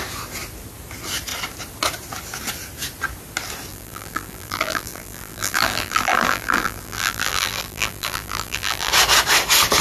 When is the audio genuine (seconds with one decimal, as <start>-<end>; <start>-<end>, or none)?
0.0-3.7; 8.9-9.8